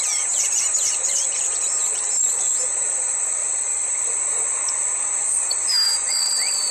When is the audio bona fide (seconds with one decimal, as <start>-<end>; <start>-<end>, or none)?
3.4-5.2